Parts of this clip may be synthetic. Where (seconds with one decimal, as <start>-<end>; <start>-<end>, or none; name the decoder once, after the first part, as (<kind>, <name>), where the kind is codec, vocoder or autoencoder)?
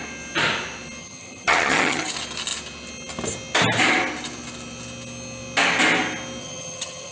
1.0-2.1 (vocoder, HiFi-GAN); 6.4-7.1